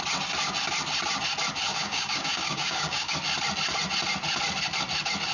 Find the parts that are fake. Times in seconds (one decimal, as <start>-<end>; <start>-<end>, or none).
1.7-3.1